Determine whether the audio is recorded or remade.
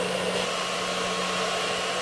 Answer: recorded